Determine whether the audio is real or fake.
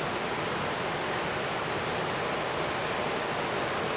real